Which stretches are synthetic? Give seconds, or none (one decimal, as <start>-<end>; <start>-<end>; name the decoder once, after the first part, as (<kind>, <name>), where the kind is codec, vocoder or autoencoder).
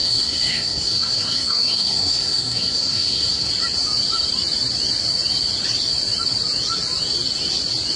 0.0-3.5 (codec, SNAC)